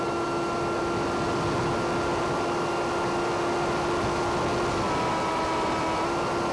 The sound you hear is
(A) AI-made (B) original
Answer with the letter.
B